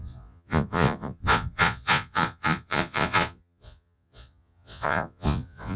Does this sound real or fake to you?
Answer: fake